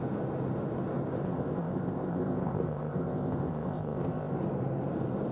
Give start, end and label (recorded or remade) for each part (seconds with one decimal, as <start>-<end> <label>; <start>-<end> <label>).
0.0-1.2 recorded; 1.2-4.4 remade; 4.4-5.3 recorded